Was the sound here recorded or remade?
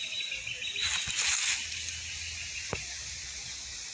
recorded